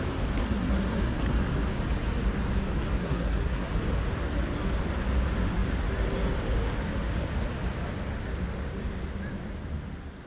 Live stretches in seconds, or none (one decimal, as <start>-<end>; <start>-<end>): 0.0-0.4; 1.2-3.0; 3.7-10.3